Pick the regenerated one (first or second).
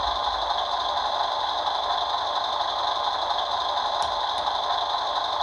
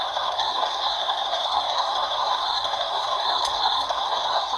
second